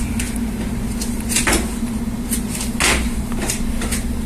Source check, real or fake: real